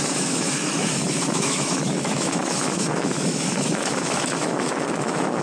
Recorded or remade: remade